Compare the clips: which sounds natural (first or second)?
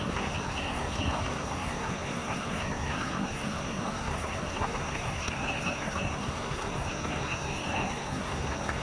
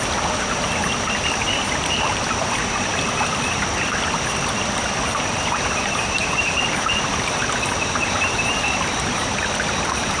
second